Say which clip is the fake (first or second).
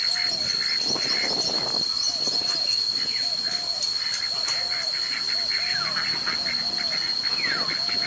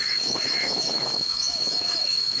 second